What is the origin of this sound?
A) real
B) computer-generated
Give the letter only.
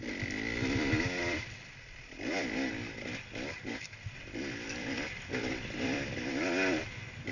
A